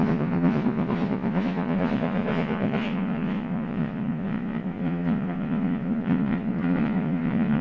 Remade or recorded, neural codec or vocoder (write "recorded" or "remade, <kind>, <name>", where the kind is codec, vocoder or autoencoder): remade, vocoder, Vocos